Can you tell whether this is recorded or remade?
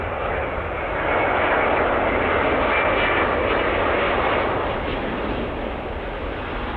recorded